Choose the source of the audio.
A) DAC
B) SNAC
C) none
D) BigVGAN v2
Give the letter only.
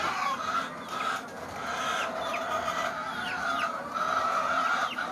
C